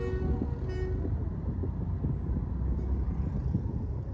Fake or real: real